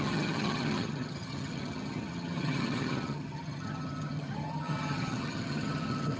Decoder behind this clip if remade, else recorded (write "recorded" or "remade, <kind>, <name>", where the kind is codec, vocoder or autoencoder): remade, vocoder, HiFi-GAN